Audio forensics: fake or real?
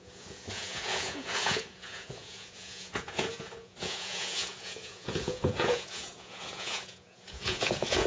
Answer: fake